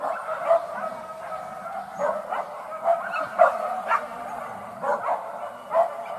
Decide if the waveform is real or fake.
real